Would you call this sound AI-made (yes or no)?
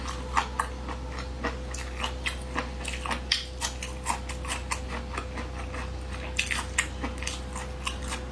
no